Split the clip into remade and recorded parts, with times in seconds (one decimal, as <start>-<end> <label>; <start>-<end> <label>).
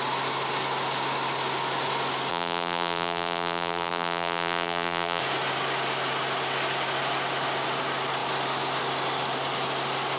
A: 0.0-2.3 recorded; 2.3-5.2 remade; 5.2-10.2 recorded